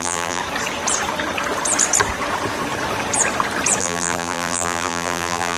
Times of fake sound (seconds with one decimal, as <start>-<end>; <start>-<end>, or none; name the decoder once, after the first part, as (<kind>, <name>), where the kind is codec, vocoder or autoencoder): 0.0-0.4 (vocoder, BigVGAN v2); 3.8-5.6